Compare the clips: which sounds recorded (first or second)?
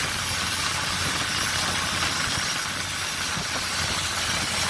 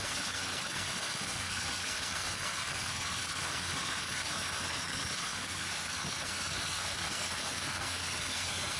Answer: first